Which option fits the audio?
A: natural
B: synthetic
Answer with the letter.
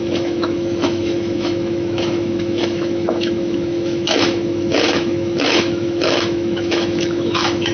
B